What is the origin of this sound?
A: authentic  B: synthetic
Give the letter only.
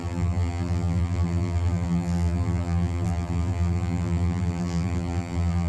B